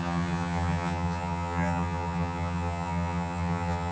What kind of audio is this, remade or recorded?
remade